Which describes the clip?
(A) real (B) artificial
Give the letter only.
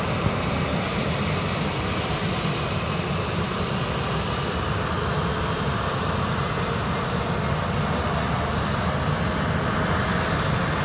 A